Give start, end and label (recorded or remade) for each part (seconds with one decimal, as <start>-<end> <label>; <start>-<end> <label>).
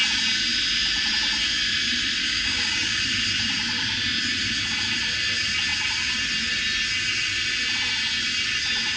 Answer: 0.0-2.2 recorded; 2.2-3.0 remade; 3.0-9.0 recorded